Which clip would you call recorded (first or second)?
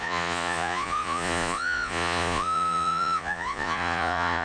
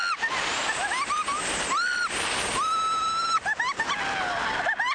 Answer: second